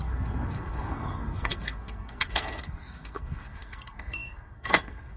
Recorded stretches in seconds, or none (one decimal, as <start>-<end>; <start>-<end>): none